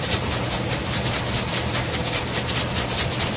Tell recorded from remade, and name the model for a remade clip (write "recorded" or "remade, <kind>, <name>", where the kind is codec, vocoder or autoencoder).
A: recorded